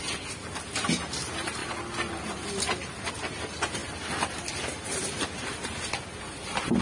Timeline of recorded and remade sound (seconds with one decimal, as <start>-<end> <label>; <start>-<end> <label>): 0.0-6.8 recorded